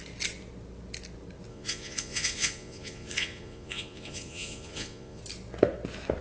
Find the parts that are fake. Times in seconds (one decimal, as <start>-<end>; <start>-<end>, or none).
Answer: 1.5-5.2

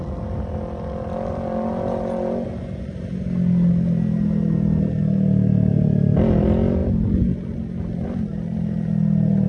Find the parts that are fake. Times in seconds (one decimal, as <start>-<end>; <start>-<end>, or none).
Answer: none

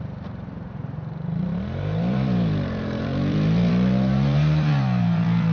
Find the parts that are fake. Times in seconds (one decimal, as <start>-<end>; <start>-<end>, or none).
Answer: 0.0-5.5

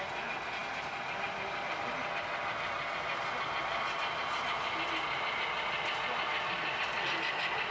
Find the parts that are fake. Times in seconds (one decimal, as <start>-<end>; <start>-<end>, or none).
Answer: none

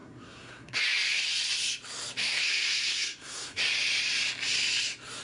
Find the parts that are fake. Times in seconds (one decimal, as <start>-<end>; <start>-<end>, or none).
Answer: 0.0-0.8; 2.2-3.6

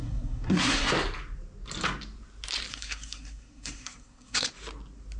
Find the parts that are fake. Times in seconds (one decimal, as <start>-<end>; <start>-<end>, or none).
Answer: 0.0-0.9; 2.7-4.5